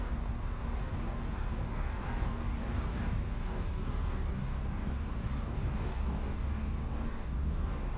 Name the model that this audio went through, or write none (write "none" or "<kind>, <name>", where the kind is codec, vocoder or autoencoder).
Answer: codec, DAC